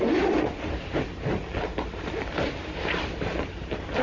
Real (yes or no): no